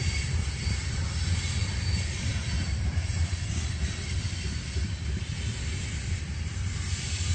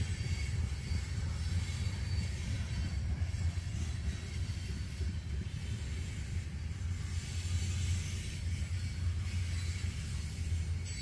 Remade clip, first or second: first